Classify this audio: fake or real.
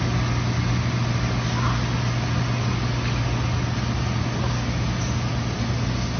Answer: real